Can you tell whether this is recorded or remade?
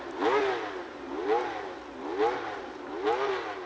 recorded